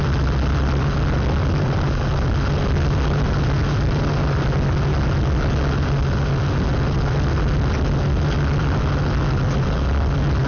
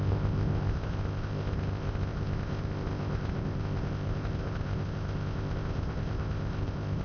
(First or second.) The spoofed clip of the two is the second